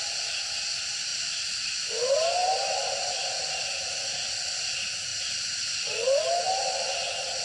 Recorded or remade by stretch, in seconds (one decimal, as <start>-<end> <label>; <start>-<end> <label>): 0.0-1.1 recorded; 1.1-1.9 remade; 1.9-5.1 recorded; 5.1-6.3 remade; 6.3-7.4 recorded